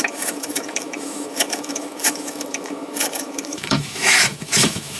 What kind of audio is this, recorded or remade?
remade